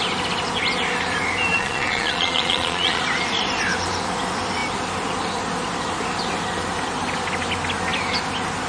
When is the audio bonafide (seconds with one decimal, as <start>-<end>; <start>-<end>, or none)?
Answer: 0.0-1.5; 3.0-8.7

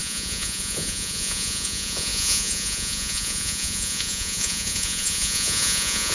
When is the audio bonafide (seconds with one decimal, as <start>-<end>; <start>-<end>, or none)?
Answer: none

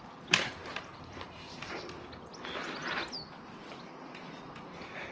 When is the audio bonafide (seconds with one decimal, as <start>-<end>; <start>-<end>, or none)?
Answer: 0.0-0.6; 1.8-5.1

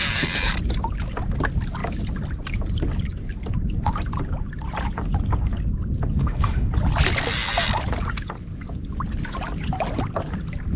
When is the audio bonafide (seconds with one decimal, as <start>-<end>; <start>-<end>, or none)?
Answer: 0.0-6.2; 6.7-10.8

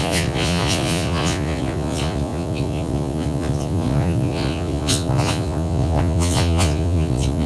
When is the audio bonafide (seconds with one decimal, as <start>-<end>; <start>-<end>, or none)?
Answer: none

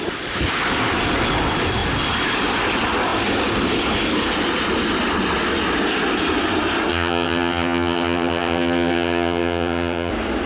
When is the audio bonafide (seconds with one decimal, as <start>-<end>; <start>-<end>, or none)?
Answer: 0.0-6.9; 10.1-10.5